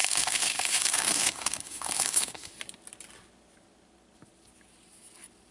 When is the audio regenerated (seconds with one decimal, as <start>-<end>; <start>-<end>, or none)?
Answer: 0.0-2.5